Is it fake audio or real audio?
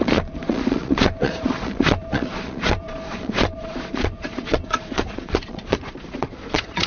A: fake